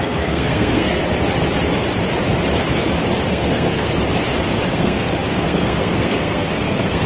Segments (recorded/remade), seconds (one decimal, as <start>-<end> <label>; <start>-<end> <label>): 0.0-1.0 remade; 1.0-3.3 recorded; 3.3-3.9 remade; 3.9-4.7 recorded; 4.7-7.1 remade